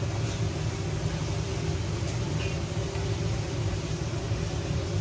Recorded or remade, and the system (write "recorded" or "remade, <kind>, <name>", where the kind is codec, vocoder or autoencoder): recorded